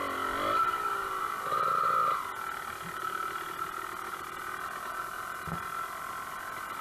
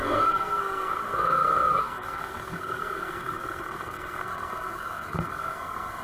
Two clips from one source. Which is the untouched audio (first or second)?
first